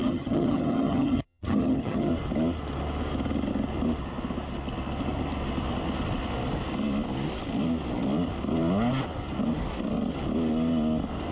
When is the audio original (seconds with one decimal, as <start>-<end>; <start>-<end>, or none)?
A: 2.1-11.3